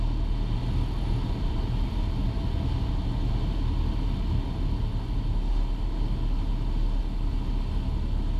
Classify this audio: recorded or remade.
recorded